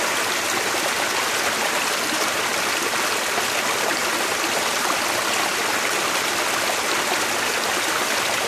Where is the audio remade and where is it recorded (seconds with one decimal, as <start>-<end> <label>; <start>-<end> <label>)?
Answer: 0.0-8.5 recorded